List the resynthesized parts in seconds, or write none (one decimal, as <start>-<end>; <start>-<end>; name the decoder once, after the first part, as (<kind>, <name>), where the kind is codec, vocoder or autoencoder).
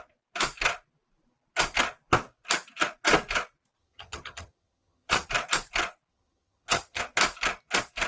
3.8-5.3 (vocoder, HiFi-GAN); 6.1-7.0